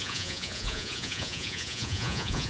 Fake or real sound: fake